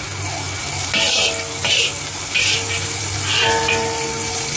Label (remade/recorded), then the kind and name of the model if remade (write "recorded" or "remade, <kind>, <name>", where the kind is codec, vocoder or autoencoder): recorded